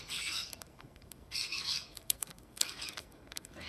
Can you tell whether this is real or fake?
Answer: fake